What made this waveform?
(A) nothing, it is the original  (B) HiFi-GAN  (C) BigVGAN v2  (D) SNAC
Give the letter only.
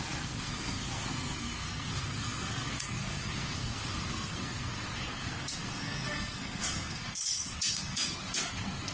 D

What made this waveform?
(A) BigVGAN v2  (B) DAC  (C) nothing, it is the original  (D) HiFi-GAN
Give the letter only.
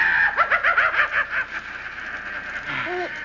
C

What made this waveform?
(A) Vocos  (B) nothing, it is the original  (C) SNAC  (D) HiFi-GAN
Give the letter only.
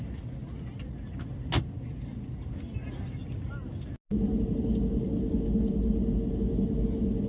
B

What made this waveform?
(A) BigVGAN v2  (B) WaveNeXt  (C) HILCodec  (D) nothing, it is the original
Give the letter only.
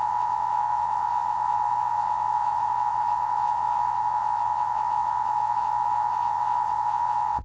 B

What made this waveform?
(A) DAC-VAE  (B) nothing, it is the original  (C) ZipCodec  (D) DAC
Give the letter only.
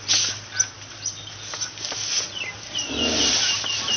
B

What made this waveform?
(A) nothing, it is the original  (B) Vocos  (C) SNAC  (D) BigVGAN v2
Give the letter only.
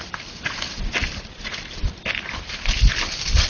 A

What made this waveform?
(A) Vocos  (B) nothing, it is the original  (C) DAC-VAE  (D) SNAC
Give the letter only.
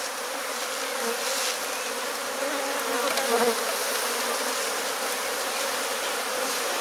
B